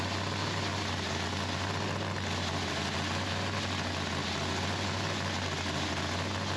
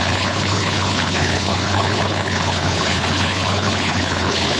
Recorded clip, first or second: first